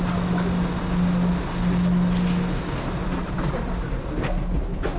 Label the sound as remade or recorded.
recorded